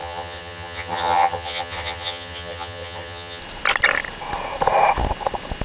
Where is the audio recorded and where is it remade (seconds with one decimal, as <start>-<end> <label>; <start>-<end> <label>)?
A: 0.0-3.4 remade; 3.4-5.6 recorded